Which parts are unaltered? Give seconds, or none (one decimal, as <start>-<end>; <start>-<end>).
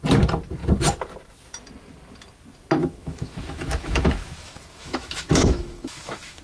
0.0-2.8